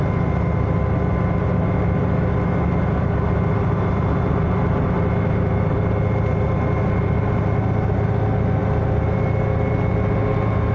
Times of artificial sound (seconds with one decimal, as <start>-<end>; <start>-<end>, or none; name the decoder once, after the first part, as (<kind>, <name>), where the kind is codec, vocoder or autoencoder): none